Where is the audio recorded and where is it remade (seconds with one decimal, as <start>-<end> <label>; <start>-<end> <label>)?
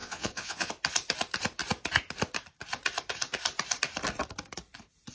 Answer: 0.0-0.7 remade; 0.7-5.1 recorded